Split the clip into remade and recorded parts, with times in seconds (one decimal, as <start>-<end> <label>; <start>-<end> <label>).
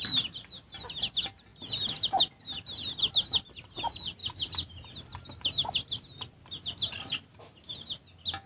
0.0-8.5 recorded